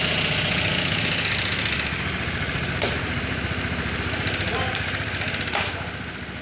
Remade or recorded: recorded